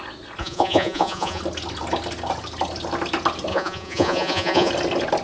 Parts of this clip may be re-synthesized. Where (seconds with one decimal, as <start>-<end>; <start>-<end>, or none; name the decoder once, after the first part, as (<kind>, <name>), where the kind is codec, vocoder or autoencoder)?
0.4-1.4 (vocoder, Vocos); 3.5-4.7